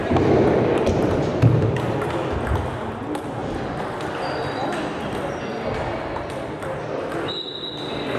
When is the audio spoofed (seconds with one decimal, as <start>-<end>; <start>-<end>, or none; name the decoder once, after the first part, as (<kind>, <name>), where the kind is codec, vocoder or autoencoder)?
none